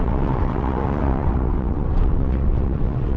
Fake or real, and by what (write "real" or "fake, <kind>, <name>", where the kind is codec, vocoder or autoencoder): fake, vocoder, WaveNeXt